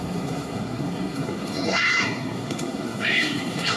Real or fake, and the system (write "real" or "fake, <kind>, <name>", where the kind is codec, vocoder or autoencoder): fake, codec, SNAC